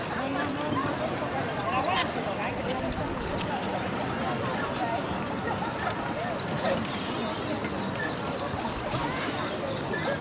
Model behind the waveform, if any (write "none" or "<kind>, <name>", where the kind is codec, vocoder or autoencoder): vocoder, BigVGAN v2